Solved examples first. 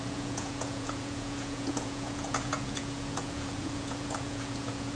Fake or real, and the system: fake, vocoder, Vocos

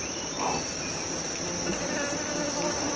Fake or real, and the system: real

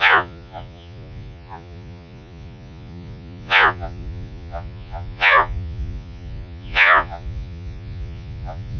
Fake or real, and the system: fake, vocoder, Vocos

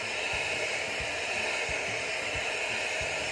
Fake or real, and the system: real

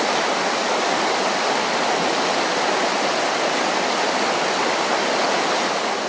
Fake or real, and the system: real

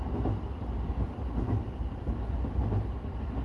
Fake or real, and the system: real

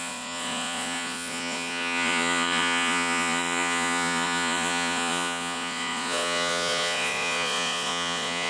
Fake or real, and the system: fake, vocoder, Vocos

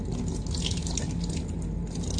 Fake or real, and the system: real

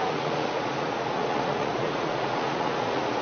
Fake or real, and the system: fake, vocoder, Vocos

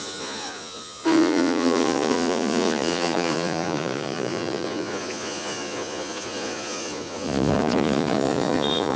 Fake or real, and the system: fake, vocoder, Vocos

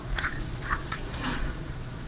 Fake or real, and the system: fake, vocoder, Vocos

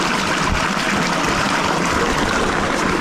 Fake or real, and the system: real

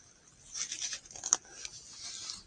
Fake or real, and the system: real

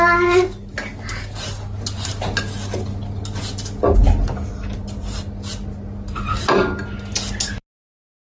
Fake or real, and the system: real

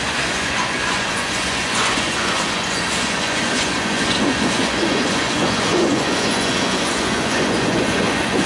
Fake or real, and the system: fake, vocoder, Vocos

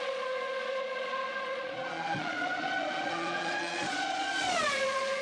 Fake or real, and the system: fake, vocoder, Vocos